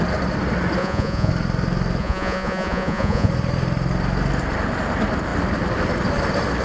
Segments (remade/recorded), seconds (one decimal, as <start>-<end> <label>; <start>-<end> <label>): 0.0-0.8 recorded; 0.8-1.3 remade; 1.3-2.0 recorded; 2.0-3.3 remade; 3.3-6.6 recorded